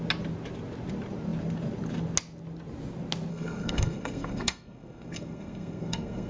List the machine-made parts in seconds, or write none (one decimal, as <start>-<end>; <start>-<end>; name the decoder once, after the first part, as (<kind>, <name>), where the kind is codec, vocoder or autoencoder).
3.3-6.3 (codec, SNAC)